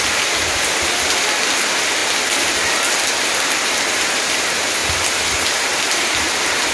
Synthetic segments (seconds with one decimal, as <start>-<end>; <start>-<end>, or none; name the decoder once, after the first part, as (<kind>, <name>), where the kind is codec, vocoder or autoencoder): 4.8-5.8 (vocoder, BigVGAN v2)